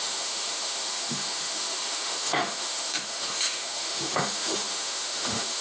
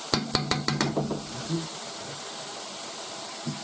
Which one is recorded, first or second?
second